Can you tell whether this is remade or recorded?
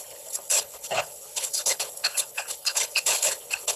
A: remade